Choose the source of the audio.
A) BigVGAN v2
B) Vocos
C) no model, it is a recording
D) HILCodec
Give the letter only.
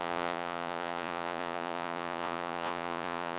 B